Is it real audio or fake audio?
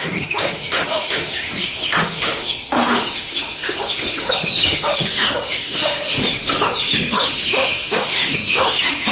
fake